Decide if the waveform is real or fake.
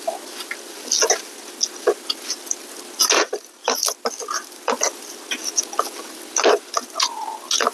real